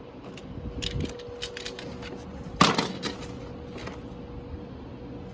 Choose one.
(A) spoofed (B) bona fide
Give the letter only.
B